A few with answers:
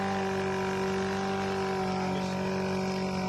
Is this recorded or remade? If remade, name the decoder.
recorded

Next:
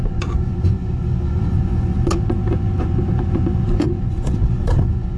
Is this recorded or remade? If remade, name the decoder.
remade, vocoder, Vocos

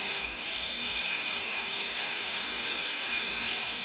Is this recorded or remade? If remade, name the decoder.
remade, codec, DAC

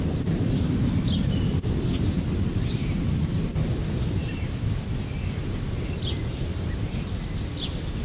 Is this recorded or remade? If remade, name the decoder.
remade, vocoder, BigVGAN v2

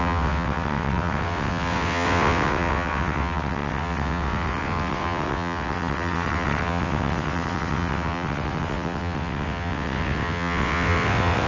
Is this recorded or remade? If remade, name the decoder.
remade, vocoder, WaveNeXt